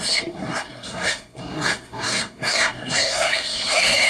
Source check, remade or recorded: remade